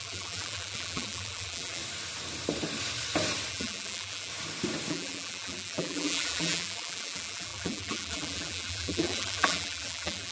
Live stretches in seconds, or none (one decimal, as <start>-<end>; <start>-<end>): 1.8-3.5; 4.3-4.9